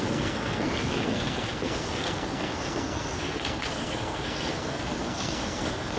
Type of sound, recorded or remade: remade